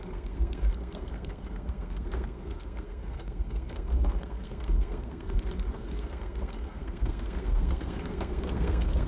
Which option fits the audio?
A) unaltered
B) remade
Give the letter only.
B